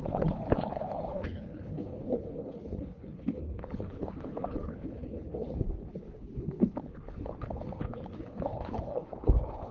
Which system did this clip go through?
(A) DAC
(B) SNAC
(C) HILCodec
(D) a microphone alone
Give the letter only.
C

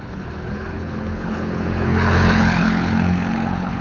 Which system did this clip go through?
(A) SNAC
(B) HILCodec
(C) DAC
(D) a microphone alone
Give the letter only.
B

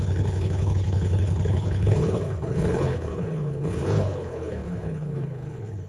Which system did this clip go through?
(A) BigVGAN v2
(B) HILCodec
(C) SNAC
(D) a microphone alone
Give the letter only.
B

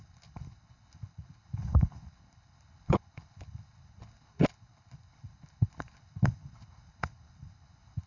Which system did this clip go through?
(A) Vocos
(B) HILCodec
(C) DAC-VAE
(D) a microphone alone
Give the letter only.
B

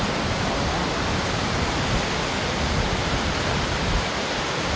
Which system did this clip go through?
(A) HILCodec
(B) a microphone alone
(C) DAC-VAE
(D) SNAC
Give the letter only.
B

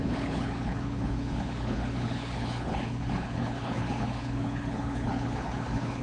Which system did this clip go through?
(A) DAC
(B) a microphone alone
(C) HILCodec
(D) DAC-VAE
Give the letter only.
C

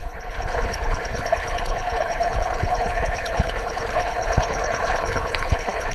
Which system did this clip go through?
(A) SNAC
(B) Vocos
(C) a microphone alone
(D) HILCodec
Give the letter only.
D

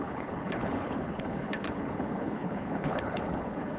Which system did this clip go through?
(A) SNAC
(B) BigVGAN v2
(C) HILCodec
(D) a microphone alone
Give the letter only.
C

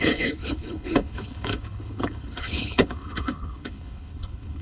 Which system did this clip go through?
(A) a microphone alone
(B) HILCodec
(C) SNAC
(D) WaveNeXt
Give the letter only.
B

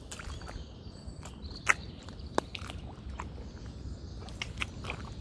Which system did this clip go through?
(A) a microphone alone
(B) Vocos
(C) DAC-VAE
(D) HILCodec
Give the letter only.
A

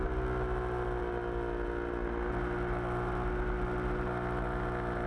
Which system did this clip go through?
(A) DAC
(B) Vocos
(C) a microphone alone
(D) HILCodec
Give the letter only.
C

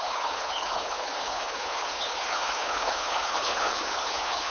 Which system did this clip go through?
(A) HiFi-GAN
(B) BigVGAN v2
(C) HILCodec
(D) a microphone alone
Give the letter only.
C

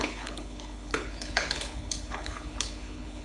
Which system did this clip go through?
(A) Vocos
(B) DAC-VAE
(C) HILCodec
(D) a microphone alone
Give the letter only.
C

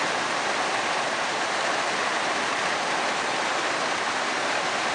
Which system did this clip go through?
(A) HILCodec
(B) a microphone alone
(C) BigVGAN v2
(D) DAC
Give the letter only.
B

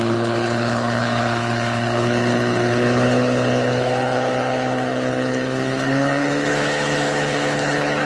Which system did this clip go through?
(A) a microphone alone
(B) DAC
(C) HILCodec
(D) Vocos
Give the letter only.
C